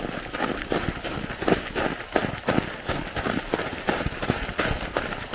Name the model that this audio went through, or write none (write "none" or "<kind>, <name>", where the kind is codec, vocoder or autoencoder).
none